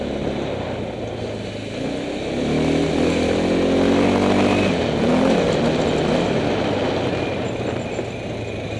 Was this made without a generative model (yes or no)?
yes